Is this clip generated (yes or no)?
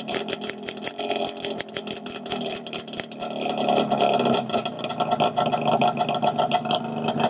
no